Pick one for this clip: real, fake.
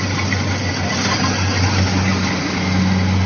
real